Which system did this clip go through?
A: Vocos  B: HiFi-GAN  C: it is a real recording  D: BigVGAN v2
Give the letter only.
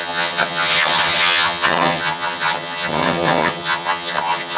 B